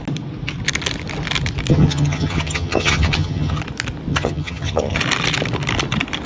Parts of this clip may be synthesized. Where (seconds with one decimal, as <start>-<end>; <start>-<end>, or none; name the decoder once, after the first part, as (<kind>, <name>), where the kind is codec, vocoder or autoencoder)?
1.7-3.6 (vocoder, HiFi-GAN); 4.1-5.0